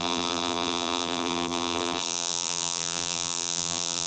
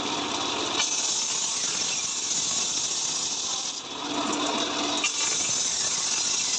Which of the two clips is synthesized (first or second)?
first